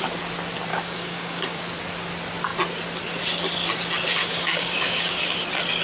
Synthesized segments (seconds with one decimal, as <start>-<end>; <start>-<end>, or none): 0.7-1.6; 4.2-5.2